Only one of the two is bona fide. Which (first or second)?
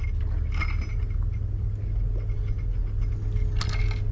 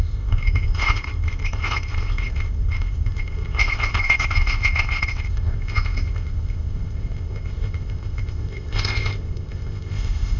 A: first